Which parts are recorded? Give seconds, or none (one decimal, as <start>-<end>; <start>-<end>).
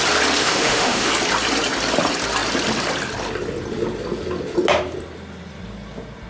0.0-0.4; 1.1-6.3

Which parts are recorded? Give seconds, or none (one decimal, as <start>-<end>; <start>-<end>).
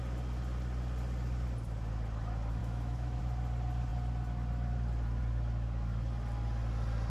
0.0-2.6; 3.2-7.1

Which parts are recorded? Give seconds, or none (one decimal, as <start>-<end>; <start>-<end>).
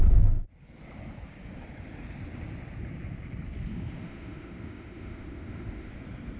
0.0-3.7; 5.9-6.4